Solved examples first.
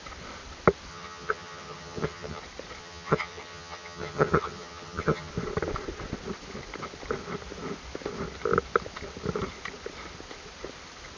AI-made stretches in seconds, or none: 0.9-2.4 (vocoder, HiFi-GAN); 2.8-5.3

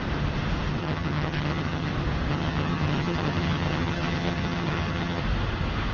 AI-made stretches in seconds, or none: 0.8-1.9 (vocoder, HiFi-GAN); 2.3-5.2

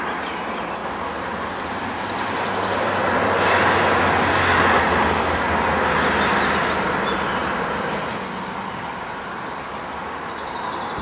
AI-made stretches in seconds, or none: none

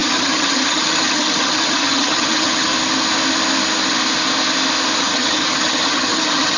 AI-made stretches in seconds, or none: 0.0-2.7 (vocoder, HiFi-GAN); 5.0-6.6

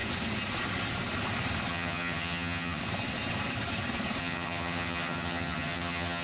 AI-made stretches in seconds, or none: 1.7-2.8 (vocoder, HiFi-GAN); 4.2-6.2